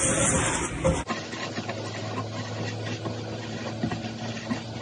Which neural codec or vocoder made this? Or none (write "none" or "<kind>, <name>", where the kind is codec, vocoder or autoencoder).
none